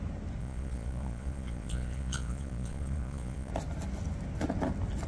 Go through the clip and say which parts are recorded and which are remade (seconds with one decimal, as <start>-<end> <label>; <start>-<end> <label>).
0.0-0.4 recorded; 0.4-3.5 remade; 3.5-5.1 recorded